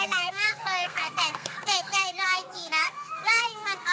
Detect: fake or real fake